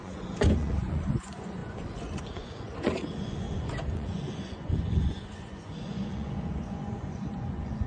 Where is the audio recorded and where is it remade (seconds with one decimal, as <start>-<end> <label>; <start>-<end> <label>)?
0.0-7.9 remade